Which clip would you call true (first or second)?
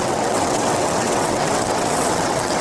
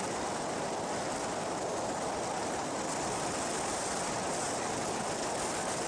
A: second